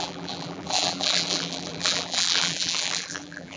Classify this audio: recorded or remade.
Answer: remade